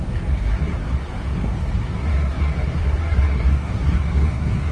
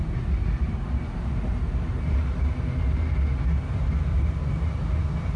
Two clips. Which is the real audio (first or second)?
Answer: second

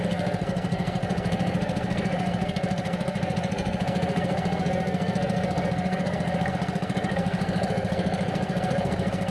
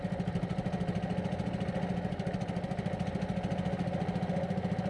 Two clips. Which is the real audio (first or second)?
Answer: second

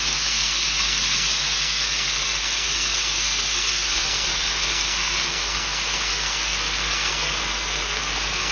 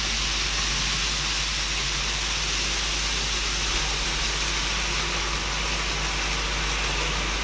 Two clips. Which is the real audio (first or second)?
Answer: second